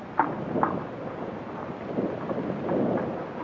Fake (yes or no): no